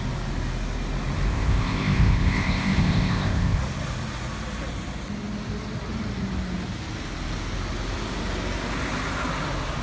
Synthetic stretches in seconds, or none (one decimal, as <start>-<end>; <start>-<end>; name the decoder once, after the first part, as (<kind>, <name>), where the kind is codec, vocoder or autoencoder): 1.3-3.6 (codec, ZipCodec)